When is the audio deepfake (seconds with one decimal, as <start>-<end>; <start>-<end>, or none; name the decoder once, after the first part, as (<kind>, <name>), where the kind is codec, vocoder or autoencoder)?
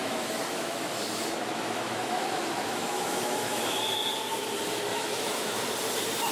0.0-3.8 (autoencoder, DAC-VAE); 4.9-5.6